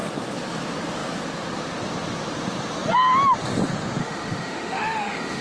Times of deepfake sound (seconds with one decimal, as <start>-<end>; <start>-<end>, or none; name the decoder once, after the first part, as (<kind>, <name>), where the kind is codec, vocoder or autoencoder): 4.0-5.4 (autoencoder, DAC-VAE)